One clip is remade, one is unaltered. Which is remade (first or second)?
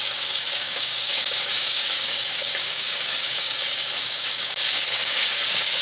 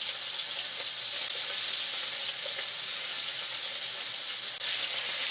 first